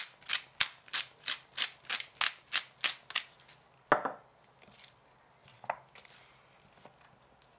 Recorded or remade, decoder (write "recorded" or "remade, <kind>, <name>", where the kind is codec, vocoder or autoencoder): recorded